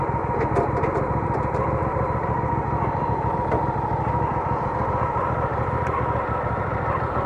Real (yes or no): no